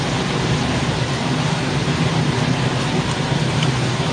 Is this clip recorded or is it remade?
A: remade